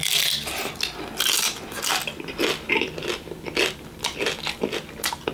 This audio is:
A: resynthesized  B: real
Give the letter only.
B